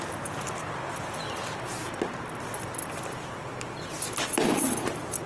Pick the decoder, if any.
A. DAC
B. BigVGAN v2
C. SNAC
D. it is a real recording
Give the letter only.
D